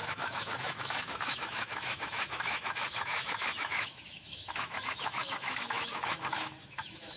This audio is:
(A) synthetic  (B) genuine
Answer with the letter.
A